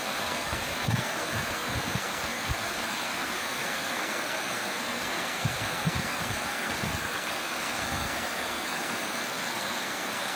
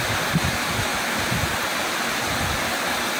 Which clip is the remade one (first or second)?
first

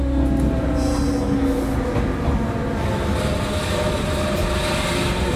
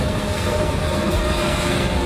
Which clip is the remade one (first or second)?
second